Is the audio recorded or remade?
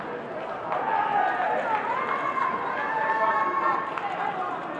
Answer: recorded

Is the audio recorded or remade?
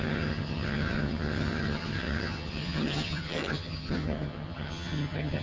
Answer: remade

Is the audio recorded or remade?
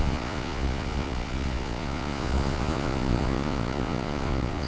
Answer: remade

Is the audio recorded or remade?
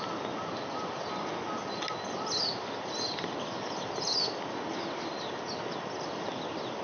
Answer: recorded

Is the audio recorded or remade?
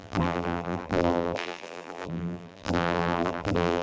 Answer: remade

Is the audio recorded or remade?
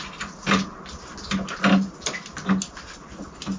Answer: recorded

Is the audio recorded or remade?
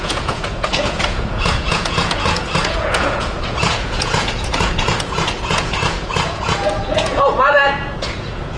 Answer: remade